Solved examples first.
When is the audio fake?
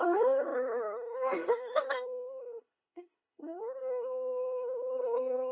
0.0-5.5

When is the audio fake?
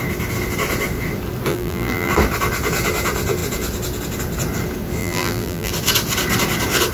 1.5-2.1; 5.0-5.7